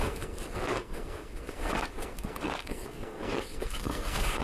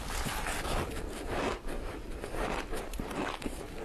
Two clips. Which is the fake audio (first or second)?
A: first